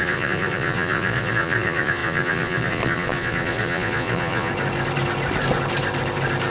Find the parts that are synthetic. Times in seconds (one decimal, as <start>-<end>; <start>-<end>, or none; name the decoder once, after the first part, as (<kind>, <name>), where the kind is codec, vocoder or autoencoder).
0.0-4.5 (vocoder, Vocos)